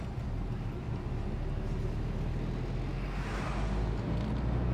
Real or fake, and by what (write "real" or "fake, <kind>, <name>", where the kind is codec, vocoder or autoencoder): real